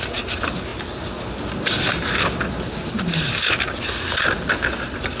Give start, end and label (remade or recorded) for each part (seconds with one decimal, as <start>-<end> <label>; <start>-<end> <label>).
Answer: 0.0-5.2 recorded